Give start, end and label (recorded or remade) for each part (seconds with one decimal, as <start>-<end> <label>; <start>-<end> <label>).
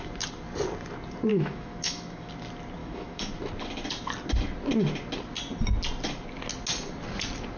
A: 0.0-1.3 recorded; 1.3-2.3 remade; 2.3-2.8 recorded; 2.8-3.3 remade; 3.3-7.6 recorded